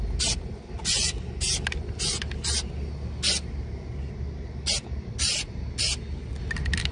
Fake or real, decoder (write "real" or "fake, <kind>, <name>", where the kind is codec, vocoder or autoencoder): real